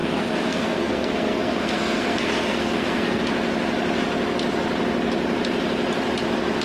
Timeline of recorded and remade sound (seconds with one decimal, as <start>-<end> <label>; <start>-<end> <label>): 0.0-3.2 remade; 3.2-6.6 recorded